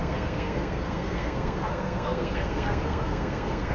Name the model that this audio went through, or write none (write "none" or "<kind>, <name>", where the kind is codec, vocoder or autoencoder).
codec, SNAC